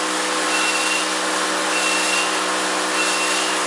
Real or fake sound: real